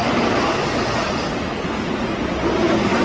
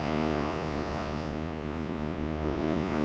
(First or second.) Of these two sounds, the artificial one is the second